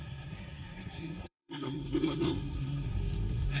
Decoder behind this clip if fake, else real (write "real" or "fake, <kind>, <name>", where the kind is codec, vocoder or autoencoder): fake, codec, SNAC